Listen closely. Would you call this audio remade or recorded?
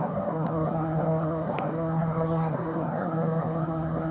remade